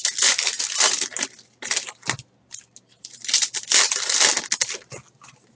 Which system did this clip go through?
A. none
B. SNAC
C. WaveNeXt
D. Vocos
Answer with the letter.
A